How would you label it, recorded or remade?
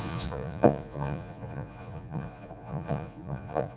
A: remade